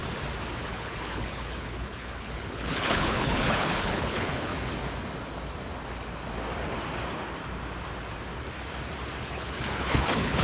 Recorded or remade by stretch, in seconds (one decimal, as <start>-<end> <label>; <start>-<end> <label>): 0.0-0.6 recorded; 0.6-4.5 remade; 4.5-9.2 recorded; 9.2-10.4 remade